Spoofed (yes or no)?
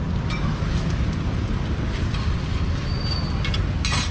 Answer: no